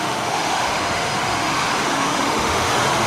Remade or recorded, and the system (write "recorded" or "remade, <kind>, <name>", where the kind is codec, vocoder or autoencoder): remade, autoencoder, DAC-VAE